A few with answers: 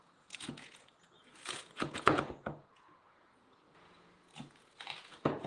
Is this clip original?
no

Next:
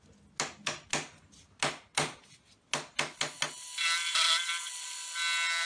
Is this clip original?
yes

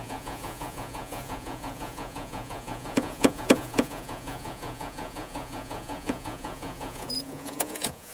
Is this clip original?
no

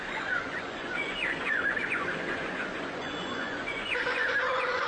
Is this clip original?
no